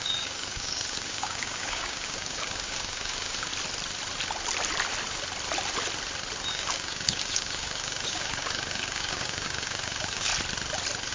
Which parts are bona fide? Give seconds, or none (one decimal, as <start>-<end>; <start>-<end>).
3.5-6.5; 10.3-11.1